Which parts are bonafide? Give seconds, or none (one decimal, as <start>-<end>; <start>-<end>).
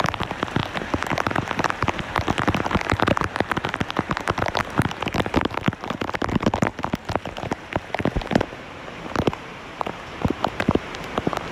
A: 6.7-7.4